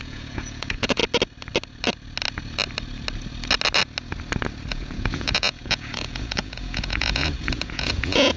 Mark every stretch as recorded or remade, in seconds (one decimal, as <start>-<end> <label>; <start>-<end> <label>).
0.0-1.0 remade; 1.0-4.7 recorded; 4.7-8.4 remade